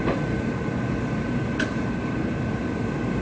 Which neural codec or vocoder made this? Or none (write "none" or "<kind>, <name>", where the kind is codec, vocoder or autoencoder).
none